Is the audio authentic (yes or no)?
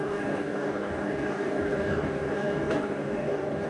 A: no